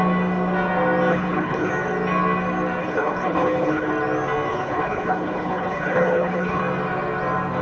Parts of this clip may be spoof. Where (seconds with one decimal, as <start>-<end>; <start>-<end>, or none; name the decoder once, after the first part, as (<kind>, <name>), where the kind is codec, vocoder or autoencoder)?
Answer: 1.1-1.7 (codec, HILCodec); 2.8-3.9; 4.5-6.6